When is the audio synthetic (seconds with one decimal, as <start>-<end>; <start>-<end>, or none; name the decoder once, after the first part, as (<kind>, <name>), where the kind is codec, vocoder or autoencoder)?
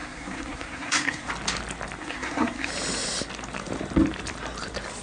0.0-1.3 (codec, SNAC); 2.0-2.7